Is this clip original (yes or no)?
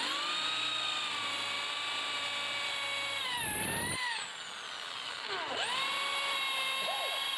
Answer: yes